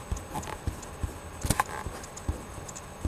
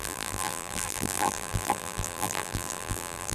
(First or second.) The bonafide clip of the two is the first